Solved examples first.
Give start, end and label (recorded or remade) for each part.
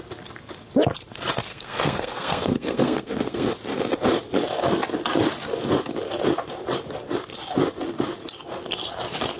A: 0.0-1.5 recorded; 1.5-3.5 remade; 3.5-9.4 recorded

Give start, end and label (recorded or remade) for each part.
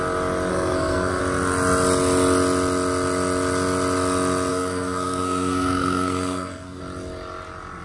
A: 0.0-0.5 recorded; 0.5-1.2 remade; 1.2-4.5 recorded; 4.5-6.8 remade; 6.8-7.8 recorded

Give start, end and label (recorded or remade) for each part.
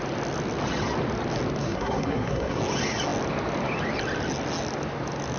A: 0.0-1.6 recorded; 1.6-2.6 remade; 2.6-5.4 recorded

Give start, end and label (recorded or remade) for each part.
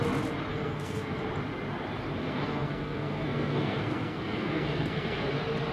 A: 0.0-0.5 recorded; 0.5-1.2 remade; 1.2-2.2 recorded; 2.2-5.3 remade; 5.3-5.7 recorded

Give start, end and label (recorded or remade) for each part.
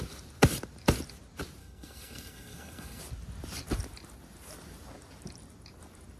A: 0.0-1.6 recorded; 1.6-3.0 remade; 3.0-6.2 recorded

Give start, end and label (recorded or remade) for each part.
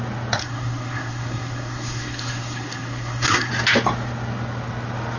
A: 0.0-0.4 recorded; 0.4-3.5 remade; 3.5-5.2 recorded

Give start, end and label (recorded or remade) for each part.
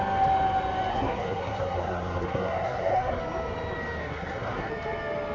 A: 0.0-0.9 recorded; 0.9-3.2 remade; 3.2-4.0 recorded; 4.0-4.7 remade; 4.7-5.3 recorded